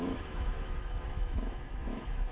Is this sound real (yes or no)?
no